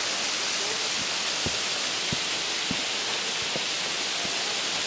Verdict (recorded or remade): recorded